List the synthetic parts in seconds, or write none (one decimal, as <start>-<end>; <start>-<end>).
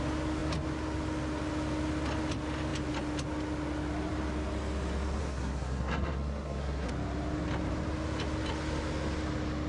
5.2-6.9